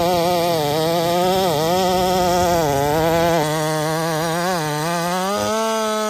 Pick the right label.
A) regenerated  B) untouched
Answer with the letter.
B